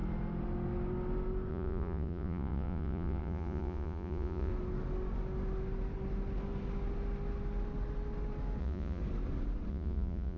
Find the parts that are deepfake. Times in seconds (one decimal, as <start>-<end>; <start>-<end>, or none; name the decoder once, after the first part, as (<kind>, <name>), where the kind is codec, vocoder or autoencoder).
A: 1.5-4.5 (vocoder, Vocos); 8.6-9.0; 9.7-10.4